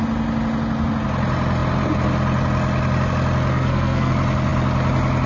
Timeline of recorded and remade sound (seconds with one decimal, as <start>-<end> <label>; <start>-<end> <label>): 0.0-3.5 recorded; 3.5-4.1 remade; 4.1-5.3 recorded